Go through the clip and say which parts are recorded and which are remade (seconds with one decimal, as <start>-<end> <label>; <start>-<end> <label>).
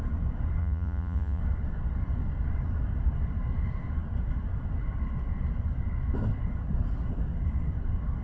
0.0-0.6 recorded; 0.6-1.4 remade; 1.4-8.2 recorded